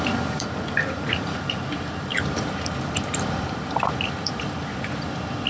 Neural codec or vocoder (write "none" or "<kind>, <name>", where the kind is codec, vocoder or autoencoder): vocoder, BigVGAN v2